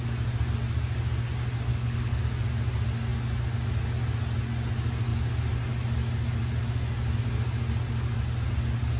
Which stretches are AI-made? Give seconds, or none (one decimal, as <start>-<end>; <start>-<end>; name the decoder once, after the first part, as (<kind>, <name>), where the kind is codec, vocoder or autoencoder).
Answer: 1.7-2.2 (codec, HILCodec)